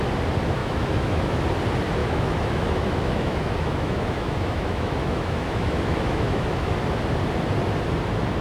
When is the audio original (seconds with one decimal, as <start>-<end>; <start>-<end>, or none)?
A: 0.0-0.6; 1.4-2.0; 6.7-8.4